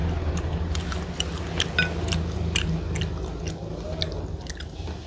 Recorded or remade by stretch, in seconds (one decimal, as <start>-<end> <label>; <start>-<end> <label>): 0.0-5.1 recorded